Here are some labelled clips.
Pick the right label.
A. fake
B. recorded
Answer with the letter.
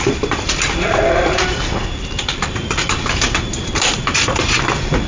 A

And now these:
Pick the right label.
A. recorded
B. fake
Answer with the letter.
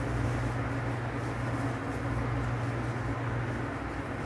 A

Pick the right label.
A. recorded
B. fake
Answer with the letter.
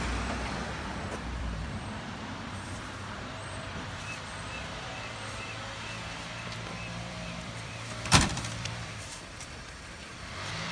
B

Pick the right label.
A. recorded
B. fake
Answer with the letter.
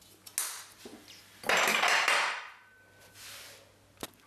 A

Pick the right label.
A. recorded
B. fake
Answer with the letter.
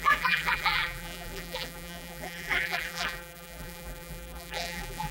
B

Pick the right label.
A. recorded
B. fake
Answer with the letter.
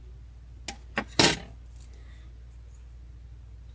A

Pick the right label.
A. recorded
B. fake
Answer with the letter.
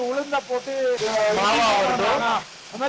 A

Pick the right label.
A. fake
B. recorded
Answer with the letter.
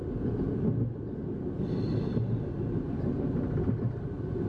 B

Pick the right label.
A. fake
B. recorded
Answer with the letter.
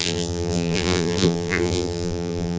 A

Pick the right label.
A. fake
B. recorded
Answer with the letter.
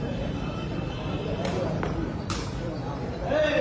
A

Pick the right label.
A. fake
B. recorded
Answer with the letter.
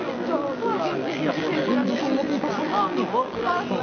A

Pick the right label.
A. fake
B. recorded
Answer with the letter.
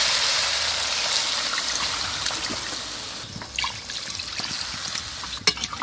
B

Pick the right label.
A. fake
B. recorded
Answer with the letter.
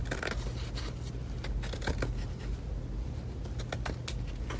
B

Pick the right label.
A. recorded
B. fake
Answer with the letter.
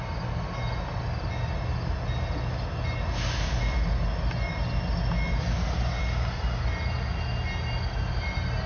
A